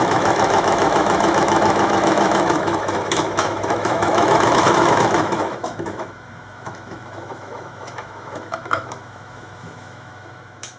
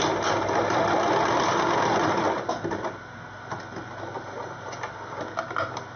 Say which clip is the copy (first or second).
first